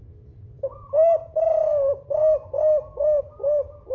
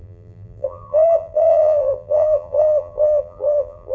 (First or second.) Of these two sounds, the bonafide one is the first